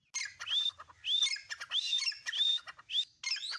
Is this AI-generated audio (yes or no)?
no